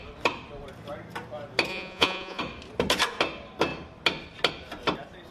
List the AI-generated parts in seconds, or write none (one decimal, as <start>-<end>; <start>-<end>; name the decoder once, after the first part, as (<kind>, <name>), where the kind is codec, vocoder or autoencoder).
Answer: 1.7-2.4 (vocoder, Vocos)